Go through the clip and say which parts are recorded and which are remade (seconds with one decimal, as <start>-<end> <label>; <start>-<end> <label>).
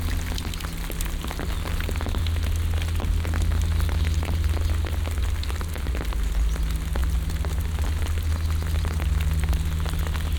0.0-10.4 recorded